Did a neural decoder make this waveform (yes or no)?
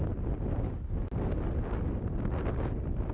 no